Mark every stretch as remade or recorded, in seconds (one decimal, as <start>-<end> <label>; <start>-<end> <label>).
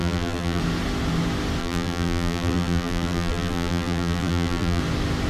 0.0-0.6 remade; 0.6-1.6 recorded; 1.6-4.8 remade; 4.8-5.3 recorded